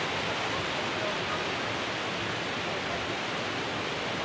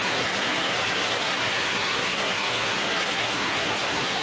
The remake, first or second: second